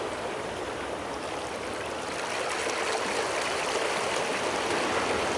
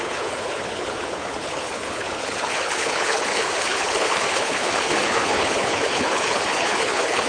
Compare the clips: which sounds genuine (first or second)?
first